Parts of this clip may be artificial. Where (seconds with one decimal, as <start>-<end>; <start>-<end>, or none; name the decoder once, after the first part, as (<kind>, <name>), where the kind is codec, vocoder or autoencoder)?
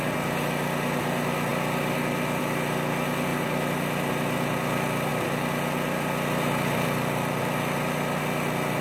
3.3-4.1 (vocoder, BigVGAN v2); 5.1-8.2